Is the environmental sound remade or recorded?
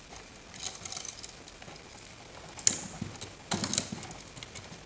recorded